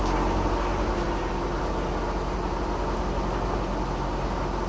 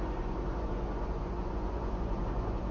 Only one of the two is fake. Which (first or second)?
second